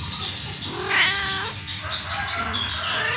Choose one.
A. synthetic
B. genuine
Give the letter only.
B